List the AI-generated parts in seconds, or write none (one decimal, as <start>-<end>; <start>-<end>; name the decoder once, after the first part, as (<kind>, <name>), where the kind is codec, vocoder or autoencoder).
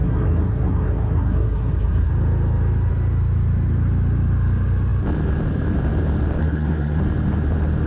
0.0-2.1 (codec, SNAC); 6.4-7.0